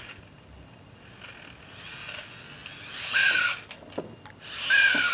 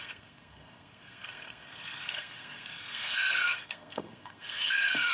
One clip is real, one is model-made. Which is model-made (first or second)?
second